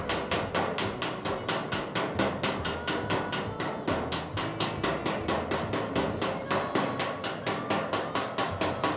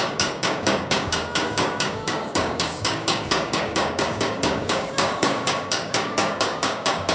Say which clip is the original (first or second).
first